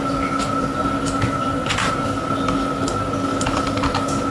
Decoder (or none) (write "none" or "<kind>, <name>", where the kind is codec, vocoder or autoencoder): none